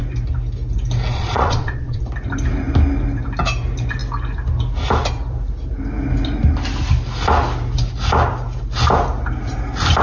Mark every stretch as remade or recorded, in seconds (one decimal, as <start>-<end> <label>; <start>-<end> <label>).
0.0-1.1 recorded; 1.1-2.0 remade; 2.0-10.0 recorded

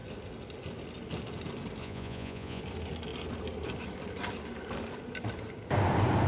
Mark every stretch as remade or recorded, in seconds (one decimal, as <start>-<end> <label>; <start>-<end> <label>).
0.0-1.8 recorded; 1.8-2.6 remade; 2.6-6.3 recorded

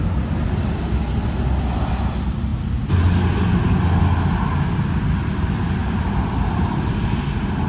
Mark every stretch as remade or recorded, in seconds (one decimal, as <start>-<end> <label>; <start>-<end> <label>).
0.0-7.7 recorded

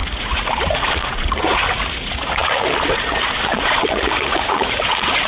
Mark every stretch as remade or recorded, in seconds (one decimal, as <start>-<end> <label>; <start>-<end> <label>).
0.0-5.3 remade

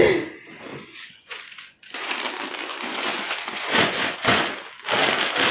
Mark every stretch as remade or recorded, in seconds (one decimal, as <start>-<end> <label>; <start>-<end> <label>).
0.0-0.7 recorded; 0.7-2.1 remade; 2.1-2.7 recorded; 2.7-4.5 remade; 4.5-5.5 recorded